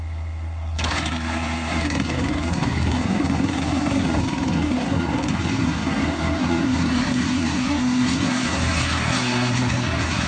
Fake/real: fake